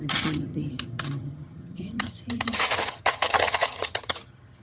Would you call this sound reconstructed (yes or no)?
yes